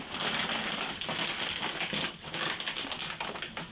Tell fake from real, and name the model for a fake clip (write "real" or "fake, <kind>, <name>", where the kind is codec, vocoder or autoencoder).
real